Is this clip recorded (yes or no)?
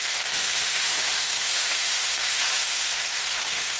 no